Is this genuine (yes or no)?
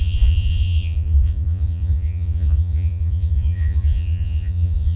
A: no